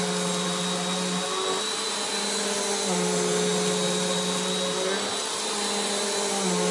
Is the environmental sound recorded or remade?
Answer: recorded